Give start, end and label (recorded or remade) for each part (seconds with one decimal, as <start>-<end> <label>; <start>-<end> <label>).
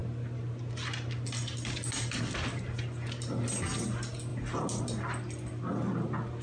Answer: 0.0-6.4 recorded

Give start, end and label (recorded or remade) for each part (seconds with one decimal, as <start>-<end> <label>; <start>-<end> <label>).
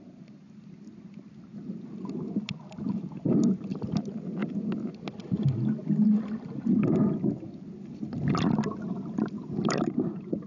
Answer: 0.0-10.5 recorded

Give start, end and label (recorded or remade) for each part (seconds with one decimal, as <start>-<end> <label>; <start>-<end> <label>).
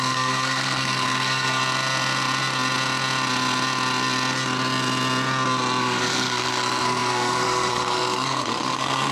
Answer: 0.0-1.6 remade; 1.6-5.8 recorded; 5.8-9.1 remade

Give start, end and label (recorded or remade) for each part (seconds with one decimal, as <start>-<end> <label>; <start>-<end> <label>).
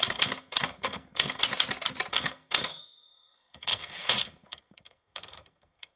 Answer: 0.0-1.4 remade; 1.4-2.1 recorded; 2.1-6.0 remade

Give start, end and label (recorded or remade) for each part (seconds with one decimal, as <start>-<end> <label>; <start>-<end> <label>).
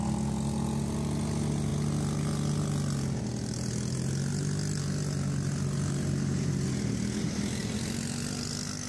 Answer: 0.0-7.6 recorded; 7.6-8.5 remade; 8.5-8.9 recorded